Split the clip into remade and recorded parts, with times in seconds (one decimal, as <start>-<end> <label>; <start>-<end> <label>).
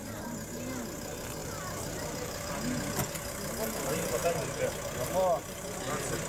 0.0-1.4 recorded; 1.4-2.5 remade; 2.5-6.3 recorded